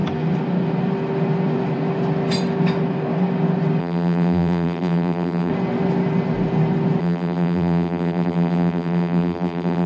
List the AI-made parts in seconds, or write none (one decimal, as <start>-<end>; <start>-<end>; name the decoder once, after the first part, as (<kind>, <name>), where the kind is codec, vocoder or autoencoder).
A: 3.8-5.5 (vocoder, BigVGAN v2); 7.0-9.9